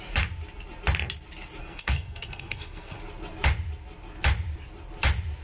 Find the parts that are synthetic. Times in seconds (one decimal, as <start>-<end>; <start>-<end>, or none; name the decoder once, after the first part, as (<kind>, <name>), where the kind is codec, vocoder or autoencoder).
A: 1.6-3.0 (codec, SNAC)